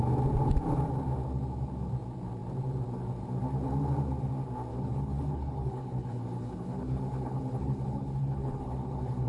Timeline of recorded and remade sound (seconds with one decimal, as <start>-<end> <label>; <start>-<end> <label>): 0.0-4.7 recorded; 4.7-9.3 remade